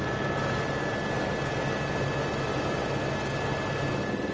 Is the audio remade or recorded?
recorded